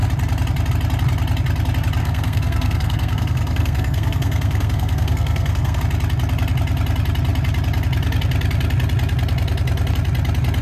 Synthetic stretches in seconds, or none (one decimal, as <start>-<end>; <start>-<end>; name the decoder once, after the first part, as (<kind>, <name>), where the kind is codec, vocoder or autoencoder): 2.0-5.8 (codec, SNAC)